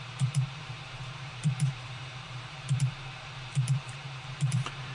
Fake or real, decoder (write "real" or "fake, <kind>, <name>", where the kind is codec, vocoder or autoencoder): fake, vocoder, BigVGAN v2